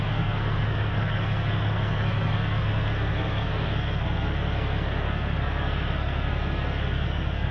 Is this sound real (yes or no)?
no